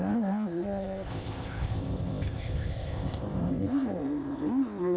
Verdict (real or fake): fake